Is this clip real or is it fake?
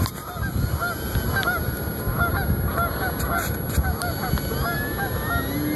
real